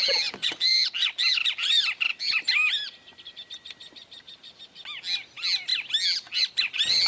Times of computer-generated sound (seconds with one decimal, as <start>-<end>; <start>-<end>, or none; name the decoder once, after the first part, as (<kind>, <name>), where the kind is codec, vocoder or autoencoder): 0.7-4.6 (vocoder, BigVGAN v2)